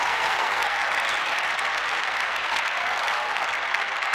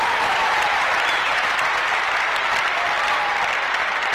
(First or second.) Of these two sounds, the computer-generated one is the first